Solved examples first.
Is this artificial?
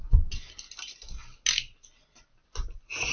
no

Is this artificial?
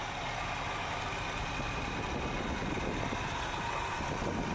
no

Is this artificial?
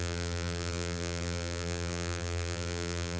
yes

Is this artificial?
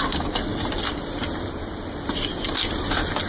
yes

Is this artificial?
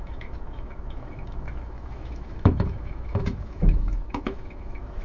yes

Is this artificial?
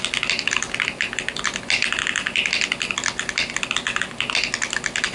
no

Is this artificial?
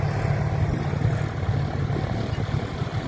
no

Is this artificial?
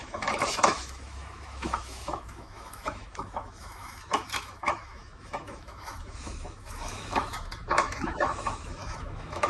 yes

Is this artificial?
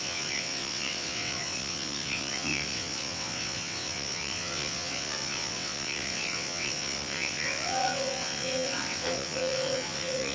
yes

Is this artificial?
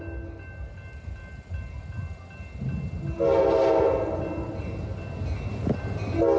no